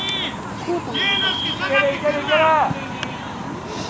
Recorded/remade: recorded